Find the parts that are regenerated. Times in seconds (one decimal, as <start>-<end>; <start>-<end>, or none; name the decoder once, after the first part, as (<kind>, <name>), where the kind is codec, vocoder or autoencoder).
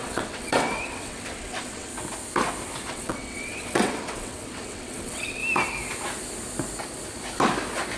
0.0-1.9 (vocoder, WaveNeXt); 2.9-5.4